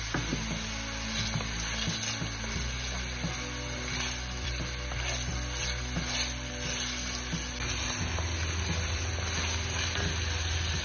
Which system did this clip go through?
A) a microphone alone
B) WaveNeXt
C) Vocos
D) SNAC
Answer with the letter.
A